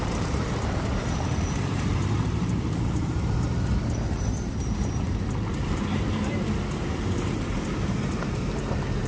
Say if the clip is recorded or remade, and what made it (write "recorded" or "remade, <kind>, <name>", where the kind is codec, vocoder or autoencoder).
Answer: remade, vocoder, BigVGAN v2